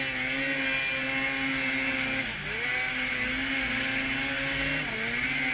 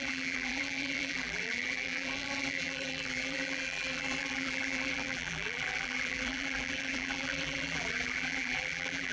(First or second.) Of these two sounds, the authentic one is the first